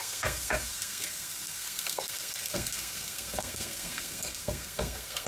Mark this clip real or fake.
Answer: fake